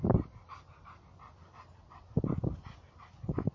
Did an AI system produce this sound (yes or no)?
no